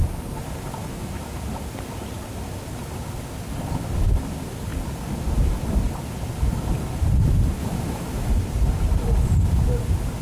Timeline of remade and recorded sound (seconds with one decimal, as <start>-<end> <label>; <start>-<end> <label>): 0.0-0.8 recorded; 0.8-1.3 remade; 1.3-7.6 recorded; 7.6-8.3 remade; 8.3-10.2 recorded